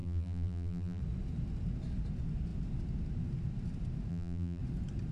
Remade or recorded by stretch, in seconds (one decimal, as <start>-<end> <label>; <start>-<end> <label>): 0.0-1.0 remade; 1.0-4.1 recorded; 4.1-4.6 remade; 4.6-5.1 recorded